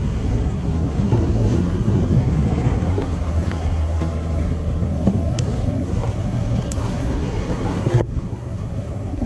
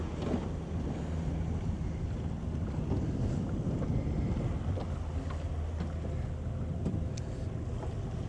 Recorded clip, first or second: second